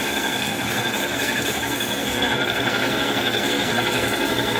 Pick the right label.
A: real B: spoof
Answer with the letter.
B